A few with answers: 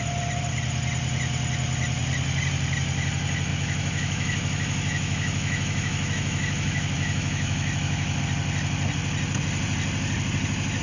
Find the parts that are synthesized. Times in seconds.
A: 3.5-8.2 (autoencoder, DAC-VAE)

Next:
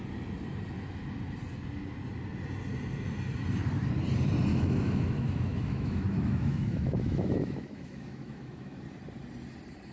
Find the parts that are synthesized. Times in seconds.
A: 4.5-8.8 (autoencoder, DAC-VAE)

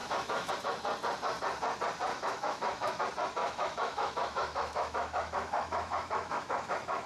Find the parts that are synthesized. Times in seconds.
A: 0.0-0.5 (autoencoder, DAC-VAE); 2.1-3.0; 3.4-7.1

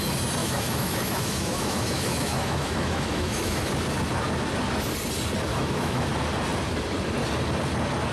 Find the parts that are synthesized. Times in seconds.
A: 0.4-3.7 (autoencoder, DAC-VAE); 5.5-6.1

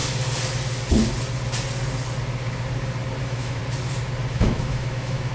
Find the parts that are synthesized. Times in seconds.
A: 3.2-3.6 (autoencoder, DAC-VAE); 4.3-5.3

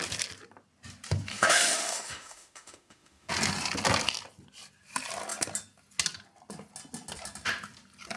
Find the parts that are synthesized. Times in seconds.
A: 1.3-3.3 (autoencoder, DAC-VAE)

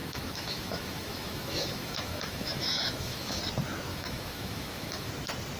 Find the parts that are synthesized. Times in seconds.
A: 0.0-3.4 (autoencoder, DAC-VAE); 3.9-5.1

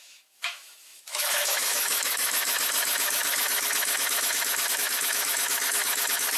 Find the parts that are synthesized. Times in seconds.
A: 0.0-6.4 (autoencoder, DAC-VAE)